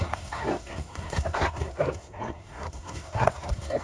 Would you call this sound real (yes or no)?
no